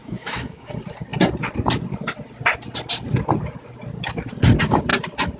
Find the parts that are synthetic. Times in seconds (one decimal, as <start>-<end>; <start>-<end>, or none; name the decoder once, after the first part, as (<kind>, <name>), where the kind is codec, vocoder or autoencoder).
0.0-0.7 (autoencoder, DAC-VAE)